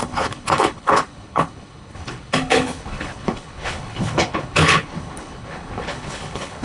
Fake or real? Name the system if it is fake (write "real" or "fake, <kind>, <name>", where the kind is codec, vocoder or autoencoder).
fake, codec, HILCodec